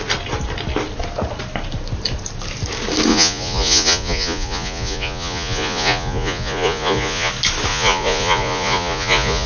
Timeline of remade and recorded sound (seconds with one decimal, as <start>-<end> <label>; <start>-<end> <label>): 0.0-3.1 recorded; 3.1-7.3 remade; 7.3-7.7 recorded; 7.7-9.5 remade